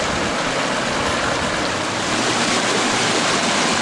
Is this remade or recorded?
recorded